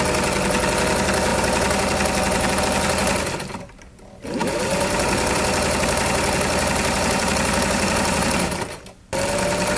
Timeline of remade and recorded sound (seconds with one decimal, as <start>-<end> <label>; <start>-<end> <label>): 0.0-1.3 recorded; 1.3-2.6 remade; 2.6-4.4 recorded; 4.4-8.8 remade; 8.8-9.8 recorded